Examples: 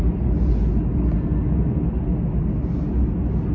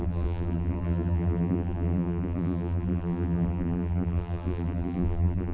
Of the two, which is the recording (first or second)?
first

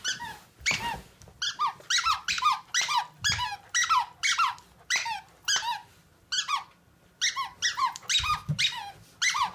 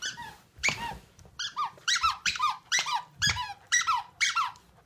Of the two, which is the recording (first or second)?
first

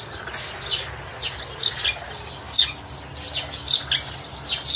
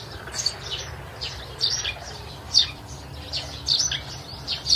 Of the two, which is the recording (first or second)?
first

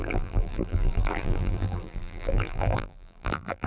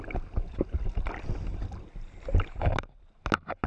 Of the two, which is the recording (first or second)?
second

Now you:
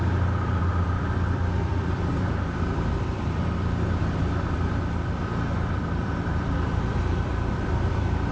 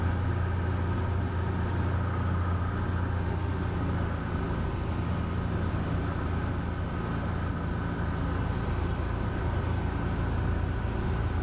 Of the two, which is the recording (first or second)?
second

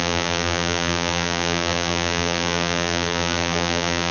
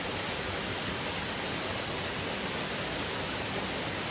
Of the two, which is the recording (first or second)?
second